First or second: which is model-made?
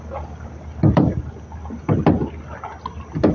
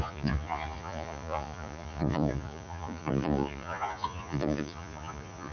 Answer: second